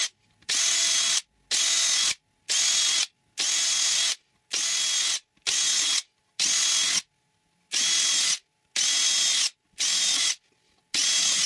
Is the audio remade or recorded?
recorded